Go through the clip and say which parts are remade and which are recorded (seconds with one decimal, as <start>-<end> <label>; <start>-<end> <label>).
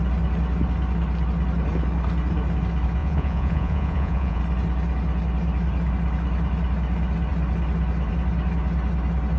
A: 0.0-3.0 recorded; 3.0-4.4 remade; 4.4-9.4 recorded